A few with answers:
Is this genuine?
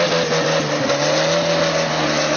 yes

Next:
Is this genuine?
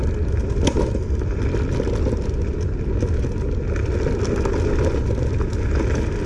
yes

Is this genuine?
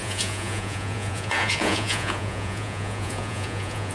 no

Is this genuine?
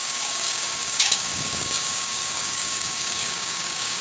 no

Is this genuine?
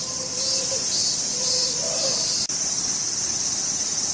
yes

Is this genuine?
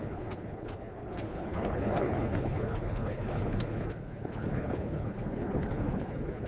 no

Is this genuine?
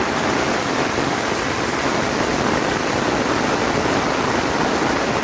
yes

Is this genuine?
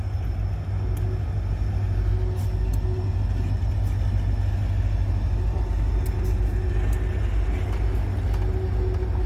yes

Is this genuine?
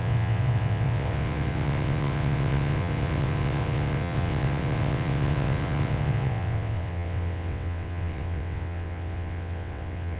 no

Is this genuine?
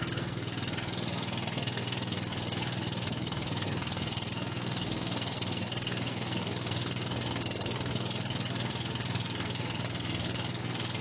no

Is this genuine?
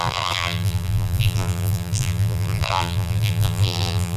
no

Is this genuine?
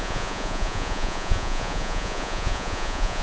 no